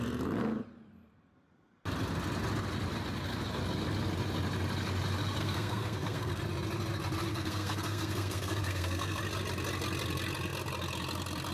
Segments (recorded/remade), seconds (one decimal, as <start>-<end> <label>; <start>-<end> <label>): 0.0-5.4 recorded; 5.4-6.4 remade; 6.4-7.3 recorded; 7.3-9.2 remade; 9.2-11.5 recorded